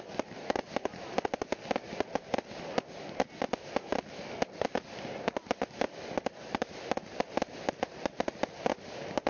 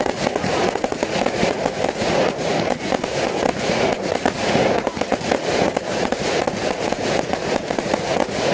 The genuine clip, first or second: first